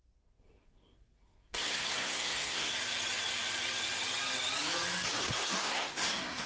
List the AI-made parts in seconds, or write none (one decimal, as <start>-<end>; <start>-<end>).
0.0-2.7; 5.2-6.5